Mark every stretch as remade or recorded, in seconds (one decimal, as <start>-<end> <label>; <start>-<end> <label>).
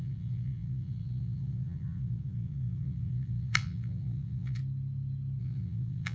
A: 0.0-4.6 remade; 4.6-5.4 recorded; 5.4-6.1 remade